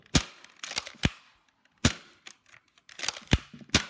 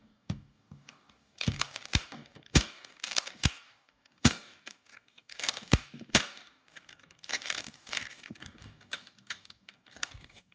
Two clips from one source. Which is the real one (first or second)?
first